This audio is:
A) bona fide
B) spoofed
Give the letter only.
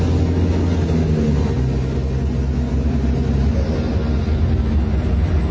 A